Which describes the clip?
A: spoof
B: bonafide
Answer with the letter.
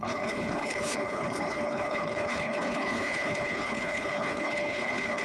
A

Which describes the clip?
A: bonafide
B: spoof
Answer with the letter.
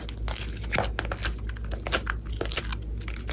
A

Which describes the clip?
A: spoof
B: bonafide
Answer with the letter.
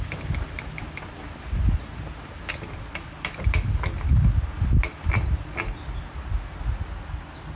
B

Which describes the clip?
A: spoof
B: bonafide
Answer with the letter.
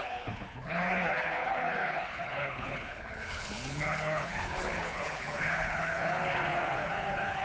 A